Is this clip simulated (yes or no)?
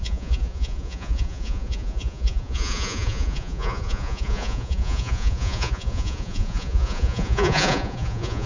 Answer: yes